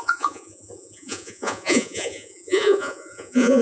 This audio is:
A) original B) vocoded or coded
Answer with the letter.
B